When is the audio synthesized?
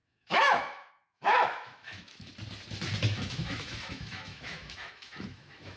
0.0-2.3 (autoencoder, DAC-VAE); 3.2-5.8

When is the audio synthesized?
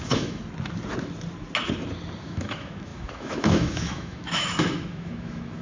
0.0-0.4 (autoencoder, DAC-VAE); 2.2-5.6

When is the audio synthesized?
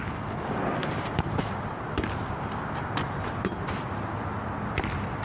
0.8-3.9 (vocoder, BigVGAN v2)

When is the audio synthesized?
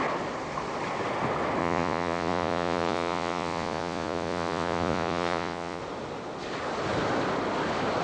1.6-5.8 (vocoder, Vocos)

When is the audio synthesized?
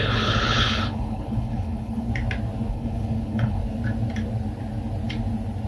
0.0-2.1 (codec, HILCodec); 2.7-3.6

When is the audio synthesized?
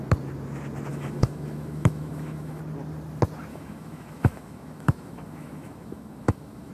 0.9-2.6 (autoencoder, DAC-VAE); 3.5-6.7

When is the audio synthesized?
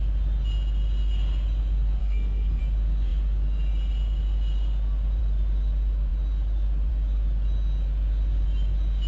2.0-2.6 (codec, SNAC)